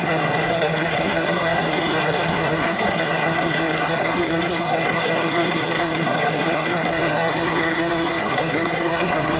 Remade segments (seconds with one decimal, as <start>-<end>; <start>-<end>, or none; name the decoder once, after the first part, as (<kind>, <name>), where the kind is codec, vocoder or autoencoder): 0.0-9.4 (codec, SNAC)